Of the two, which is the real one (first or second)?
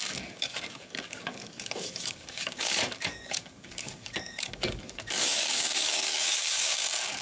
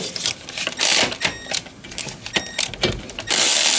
second